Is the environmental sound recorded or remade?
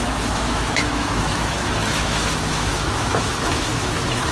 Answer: remade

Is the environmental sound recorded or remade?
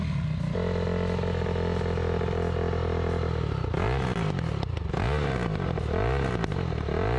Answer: recorded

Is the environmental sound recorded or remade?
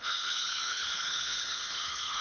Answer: remade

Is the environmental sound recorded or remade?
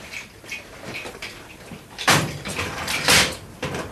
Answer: remade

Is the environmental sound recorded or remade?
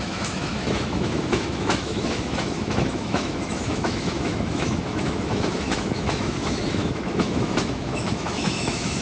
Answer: remade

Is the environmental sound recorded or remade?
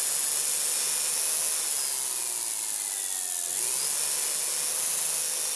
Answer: recorded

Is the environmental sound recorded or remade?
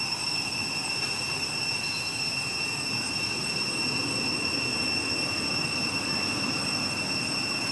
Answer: recorded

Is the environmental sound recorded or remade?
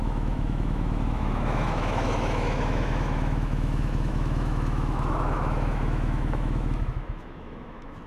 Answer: remade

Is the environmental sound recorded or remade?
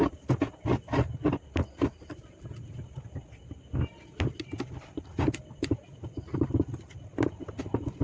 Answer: recorded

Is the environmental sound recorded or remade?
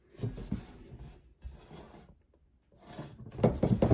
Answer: recorded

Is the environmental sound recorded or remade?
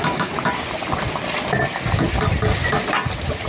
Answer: recorded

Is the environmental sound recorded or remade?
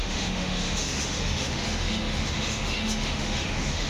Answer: remade